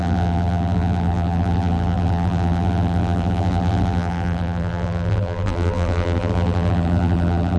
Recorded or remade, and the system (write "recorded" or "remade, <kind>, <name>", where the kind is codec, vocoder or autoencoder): remade, vocoder, BigVGAN v2